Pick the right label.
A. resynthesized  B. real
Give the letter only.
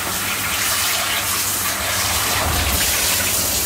B